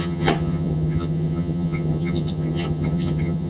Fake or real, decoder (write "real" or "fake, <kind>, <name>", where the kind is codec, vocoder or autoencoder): fake, vocoder, HiFi-GAN